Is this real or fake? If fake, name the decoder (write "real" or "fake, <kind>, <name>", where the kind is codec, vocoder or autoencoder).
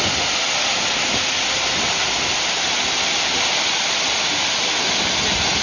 real